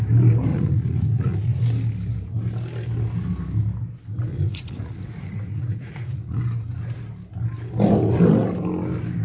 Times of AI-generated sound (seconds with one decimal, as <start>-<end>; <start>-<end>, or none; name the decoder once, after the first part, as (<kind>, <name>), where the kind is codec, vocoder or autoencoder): 0.5-1.6 (vocoder, Vocos); 4.3-6.4